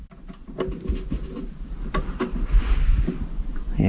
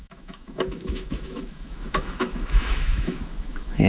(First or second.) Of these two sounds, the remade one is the second